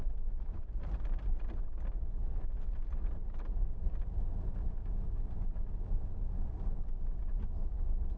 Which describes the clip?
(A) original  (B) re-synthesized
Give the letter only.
A